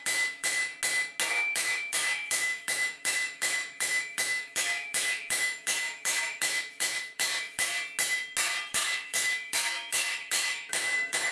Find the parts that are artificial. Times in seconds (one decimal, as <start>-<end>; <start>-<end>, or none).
0.0-0.7; 1.3-7.7; 8.7-11.3